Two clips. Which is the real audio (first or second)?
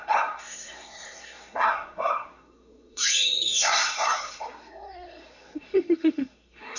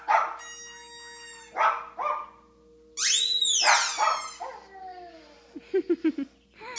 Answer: second